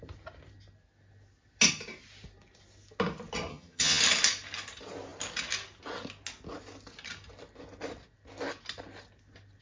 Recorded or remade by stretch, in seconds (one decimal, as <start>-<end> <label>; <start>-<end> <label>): 0.0-3.5 recorded; 3.5-4.0 remade; 4.0-9.6 recorded